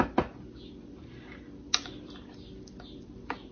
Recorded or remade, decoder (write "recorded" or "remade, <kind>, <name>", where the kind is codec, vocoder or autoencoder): recorded